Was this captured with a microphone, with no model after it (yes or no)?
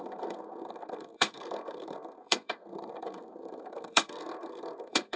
no